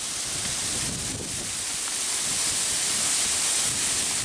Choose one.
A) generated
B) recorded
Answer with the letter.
B